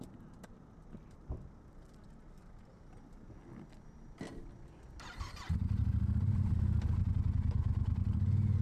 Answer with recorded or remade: recorded